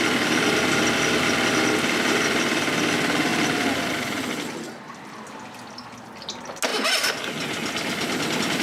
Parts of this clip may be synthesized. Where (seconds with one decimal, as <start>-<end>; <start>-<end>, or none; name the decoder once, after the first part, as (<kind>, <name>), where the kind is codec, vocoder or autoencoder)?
none